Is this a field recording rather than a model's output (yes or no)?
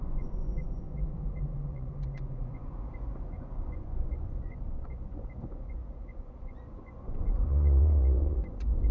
no